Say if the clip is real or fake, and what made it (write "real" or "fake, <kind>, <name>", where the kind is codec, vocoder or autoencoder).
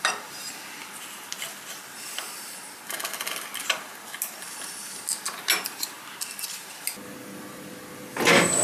real